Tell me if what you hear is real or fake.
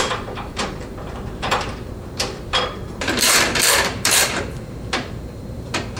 fake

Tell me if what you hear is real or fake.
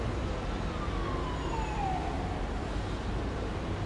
real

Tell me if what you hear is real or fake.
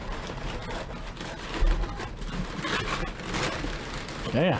real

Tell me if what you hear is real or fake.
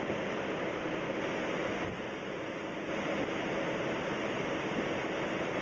real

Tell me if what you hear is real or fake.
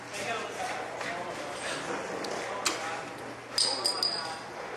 real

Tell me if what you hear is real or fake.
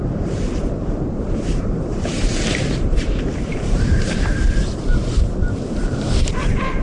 fake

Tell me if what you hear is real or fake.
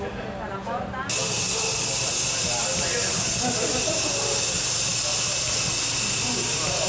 real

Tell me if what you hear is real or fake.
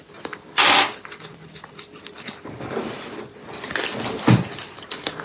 real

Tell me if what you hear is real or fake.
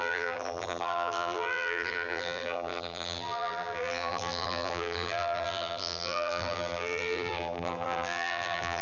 fake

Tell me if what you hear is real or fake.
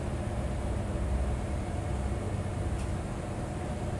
real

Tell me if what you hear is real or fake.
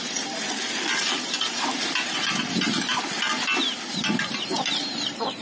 fake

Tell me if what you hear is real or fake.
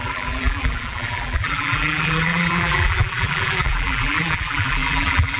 fake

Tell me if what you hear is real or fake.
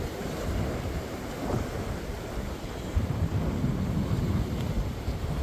fake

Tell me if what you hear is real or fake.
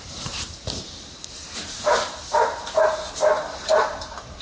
fake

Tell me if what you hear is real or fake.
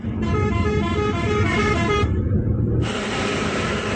fake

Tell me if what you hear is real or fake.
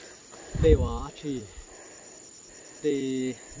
fake